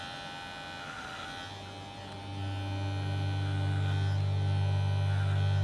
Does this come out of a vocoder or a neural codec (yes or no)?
no